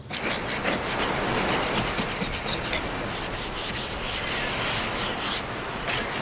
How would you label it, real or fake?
real